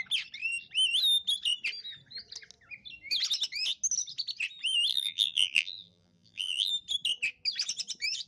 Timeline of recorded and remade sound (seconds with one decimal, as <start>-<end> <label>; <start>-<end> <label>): 0.0-4.9 recorded; 4.9-6.7 remade; 6.7-8.3 recorded

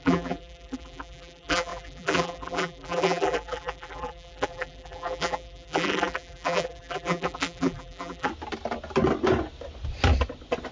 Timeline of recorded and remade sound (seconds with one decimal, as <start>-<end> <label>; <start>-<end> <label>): 0.0-8.3 remade; 8.3-10.7 recorded

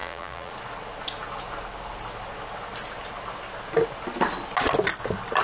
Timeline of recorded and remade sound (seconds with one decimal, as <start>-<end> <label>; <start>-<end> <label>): 0.0-0.5 remade; 0.5-5.4 recorded

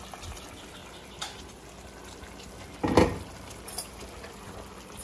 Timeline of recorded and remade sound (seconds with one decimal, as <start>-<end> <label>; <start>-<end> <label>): 0.0-5.0 recorded

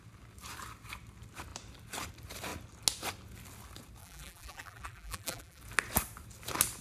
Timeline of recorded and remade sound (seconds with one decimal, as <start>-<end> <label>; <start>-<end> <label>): 0.0-4.0 recorded; 4.0-5.6 remade; 5.6-6.8 recorded

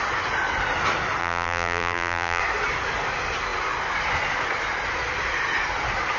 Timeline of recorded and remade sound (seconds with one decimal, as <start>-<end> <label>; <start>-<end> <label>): 0.0-1.2 recorded; 1.2-2.4 remade; 2.4-6.2 recorded

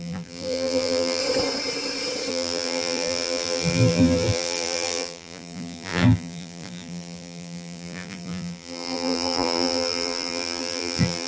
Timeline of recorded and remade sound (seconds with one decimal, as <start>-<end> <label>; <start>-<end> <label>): 0.0-1.2 remade; 1.2-2.3 recorded; 2.3-11.3 remade